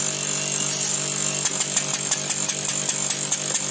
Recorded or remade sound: recorded